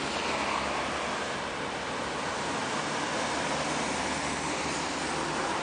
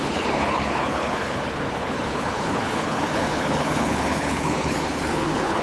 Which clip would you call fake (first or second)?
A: second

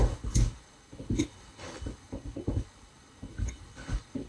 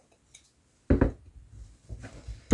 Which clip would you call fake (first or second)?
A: first